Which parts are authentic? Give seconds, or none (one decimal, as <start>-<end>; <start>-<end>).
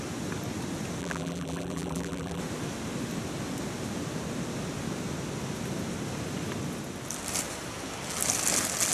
0.0-1.0; 2.4-8.9